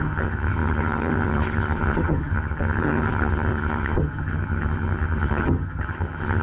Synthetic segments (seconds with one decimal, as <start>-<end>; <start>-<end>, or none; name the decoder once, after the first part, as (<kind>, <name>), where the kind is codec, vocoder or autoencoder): 0.0-6.4 (vocoder, HiFi-GAN)